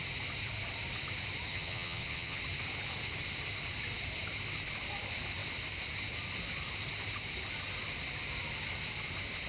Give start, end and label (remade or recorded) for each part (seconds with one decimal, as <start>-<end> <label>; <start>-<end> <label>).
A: 0.0-1.5 recorded; 1.5-2.4 remade; 2.4-9.5 recorded